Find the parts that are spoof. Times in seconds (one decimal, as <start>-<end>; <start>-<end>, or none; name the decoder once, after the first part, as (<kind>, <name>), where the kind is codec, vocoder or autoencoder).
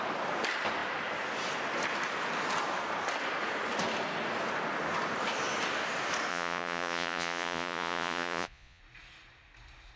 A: 6.3-8.8 (vocoder, Vocos)